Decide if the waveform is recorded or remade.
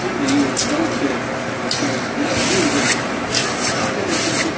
recorded